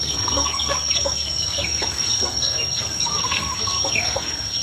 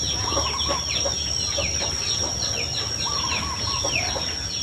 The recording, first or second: second